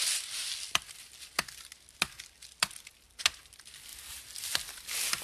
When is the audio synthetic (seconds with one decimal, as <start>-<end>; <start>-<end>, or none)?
none